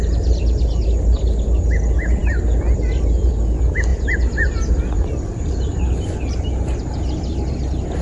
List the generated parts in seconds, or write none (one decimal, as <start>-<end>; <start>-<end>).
2.2-3.3; 3.9-5.8